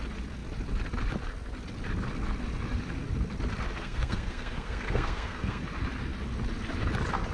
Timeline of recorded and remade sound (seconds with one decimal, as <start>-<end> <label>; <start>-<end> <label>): 0.0-3.8 recorded; 3.8-5.6 remade; 5.6-7.3 recorded